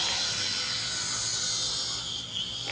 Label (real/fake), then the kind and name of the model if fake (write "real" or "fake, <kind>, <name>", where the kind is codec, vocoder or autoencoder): real